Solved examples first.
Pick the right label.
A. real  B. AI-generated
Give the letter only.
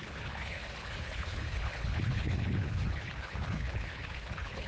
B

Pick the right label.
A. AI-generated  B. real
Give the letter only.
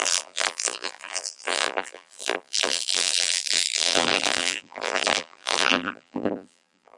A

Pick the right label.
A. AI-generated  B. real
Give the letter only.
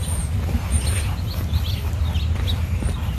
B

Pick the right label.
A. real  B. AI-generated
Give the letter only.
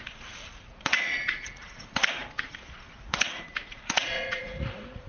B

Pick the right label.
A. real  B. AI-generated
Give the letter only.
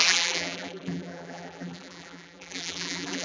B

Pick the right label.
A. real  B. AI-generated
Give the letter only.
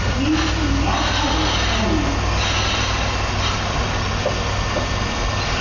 A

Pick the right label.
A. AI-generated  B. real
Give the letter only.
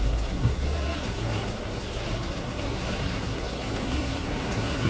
A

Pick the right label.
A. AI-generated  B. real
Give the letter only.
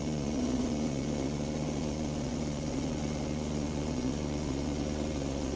A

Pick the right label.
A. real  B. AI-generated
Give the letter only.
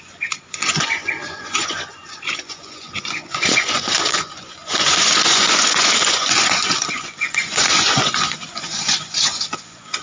B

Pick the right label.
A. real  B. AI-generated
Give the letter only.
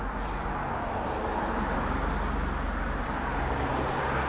A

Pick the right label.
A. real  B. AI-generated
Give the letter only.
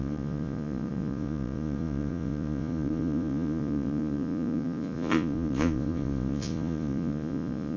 B